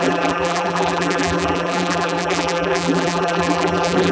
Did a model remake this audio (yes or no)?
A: yes